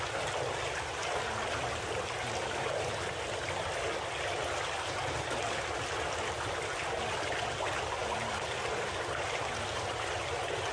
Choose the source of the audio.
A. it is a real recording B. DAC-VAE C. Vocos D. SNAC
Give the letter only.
A